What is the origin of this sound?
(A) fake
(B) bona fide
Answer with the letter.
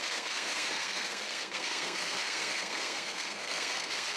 A